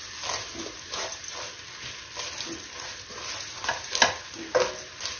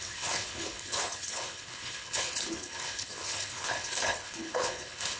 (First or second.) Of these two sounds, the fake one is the second